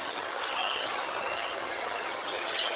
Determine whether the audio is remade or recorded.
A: remade